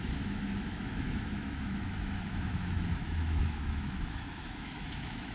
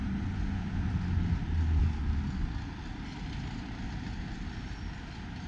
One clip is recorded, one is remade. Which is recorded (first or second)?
second